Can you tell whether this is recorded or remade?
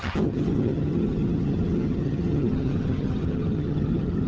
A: remade